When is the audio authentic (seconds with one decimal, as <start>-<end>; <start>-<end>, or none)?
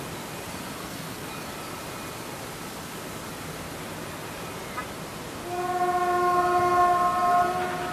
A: 0.0-0.8; 1.3-7.9